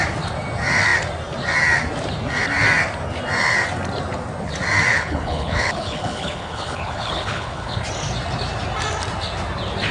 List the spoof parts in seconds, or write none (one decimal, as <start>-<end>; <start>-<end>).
4.9-7.8